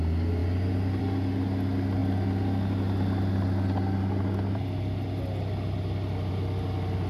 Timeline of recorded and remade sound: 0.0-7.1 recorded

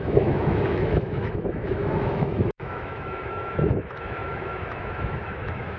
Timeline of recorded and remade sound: 0.0-5.8 remade